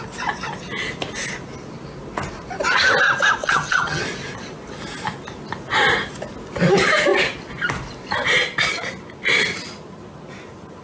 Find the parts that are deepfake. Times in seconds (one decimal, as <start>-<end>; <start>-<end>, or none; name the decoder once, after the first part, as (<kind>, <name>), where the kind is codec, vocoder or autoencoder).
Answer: 3.4-4.0 (vocoder, HiFi-GAN)